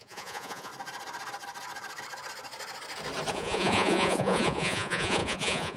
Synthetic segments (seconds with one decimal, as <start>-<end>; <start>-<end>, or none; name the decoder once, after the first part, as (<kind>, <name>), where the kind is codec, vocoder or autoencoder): 0.0-0.7 (vocoder, Vocos); 3.3-5.8